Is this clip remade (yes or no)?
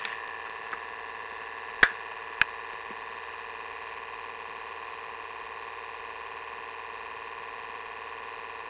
no